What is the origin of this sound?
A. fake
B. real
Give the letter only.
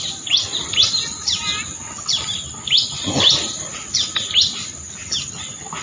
B